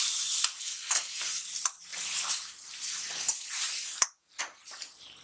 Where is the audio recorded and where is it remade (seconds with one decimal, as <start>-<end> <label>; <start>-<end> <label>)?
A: 0.0-0.6 recorded; 0.6-1.4 remade; 1.4-5.2 recorded